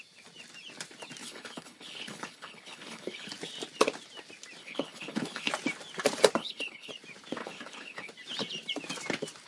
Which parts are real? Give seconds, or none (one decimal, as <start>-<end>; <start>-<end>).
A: 0.0-1.2; 3.3-4.6; 5.5-6.4; 6.9-7.4; 8.1-9.5